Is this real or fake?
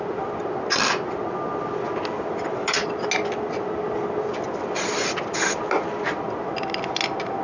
real